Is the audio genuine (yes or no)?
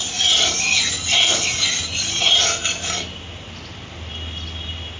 yes